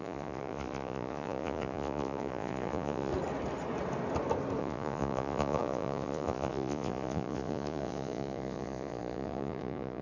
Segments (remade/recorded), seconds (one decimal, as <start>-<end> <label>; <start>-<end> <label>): 0.0-3.1 remade; 3.1-4.6 recorded; 4.6-10.0 remade